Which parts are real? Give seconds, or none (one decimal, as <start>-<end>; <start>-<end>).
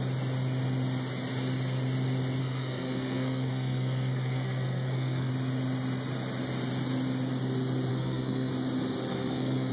0.0-2.4; 5.3-7.9; 8.5-9.1